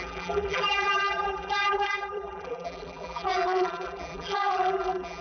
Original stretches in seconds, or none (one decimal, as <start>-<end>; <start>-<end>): none